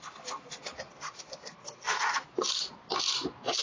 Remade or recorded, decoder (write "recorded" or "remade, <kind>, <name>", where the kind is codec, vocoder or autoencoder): recorded